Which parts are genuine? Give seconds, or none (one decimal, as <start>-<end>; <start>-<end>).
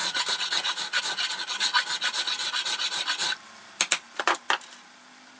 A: 1.0-5.4